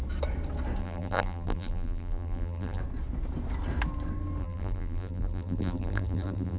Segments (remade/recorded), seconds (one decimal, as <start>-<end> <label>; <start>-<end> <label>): 0.0-0.8 recorded; 0.8-2.8 remade; 2.8-4.4 recorded; 4.4-6.6 remade